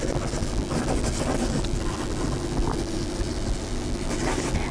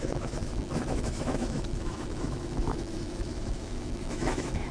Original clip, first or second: first